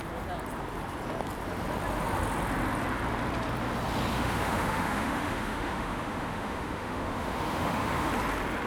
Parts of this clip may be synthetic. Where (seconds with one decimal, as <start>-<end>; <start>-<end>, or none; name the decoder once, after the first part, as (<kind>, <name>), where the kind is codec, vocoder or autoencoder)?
4.1-8.1 (autoencoder, DAC-VAE)